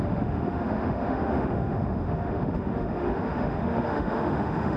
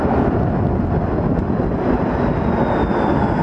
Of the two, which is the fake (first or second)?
first